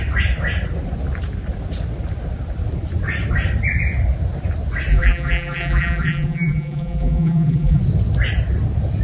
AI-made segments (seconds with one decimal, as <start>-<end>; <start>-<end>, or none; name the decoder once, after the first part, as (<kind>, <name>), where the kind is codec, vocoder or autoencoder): 4.9-7.8 (vocoder, BigVGAN v2)

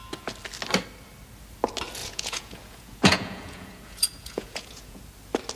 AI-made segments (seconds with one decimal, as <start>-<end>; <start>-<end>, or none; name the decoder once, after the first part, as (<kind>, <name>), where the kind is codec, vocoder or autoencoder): 2.0-5.0 (vocoder, Vocos)

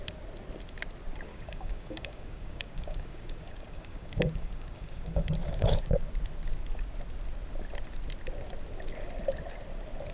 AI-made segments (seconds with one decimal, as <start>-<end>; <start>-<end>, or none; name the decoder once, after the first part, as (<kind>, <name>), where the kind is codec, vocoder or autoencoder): 1.3-6.1 (codec, DAC)

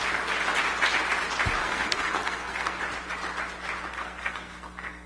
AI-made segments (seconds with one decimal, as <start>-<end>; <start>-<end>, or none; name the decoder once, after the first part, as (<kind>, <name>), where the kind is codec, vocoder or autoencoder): 1.6-2.8 (codec, SNAC); 3.9-5.1

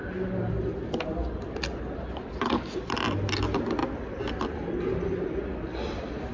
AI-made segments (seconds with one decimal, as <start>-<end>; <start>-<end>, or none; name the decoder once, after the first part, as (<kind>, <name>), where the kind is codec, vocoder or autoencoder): none

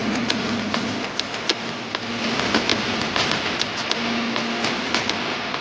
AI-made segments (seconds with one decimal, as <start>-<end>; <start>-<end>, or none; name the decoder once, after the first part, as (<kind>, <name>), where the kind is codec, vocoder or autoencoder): 0.0-0.5 (vocoder, Vocos)

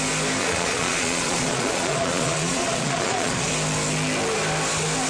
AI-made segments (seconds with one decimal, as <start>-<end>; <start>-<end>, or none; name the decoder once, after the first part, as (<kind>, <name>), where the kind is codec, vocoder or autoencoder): 0.4-3.5 (vocoder, Vocos)